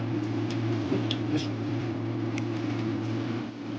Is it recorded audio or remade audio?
remade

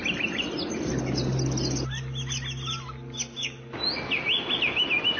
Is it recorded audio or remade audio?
recorded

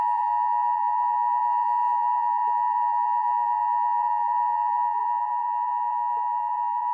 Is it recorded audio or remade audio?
remade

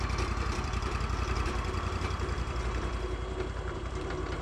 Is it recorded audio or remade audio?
remade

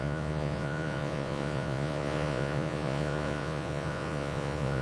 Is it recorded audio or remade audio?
remade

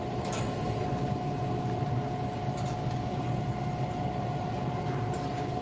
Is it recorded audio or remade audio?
recorded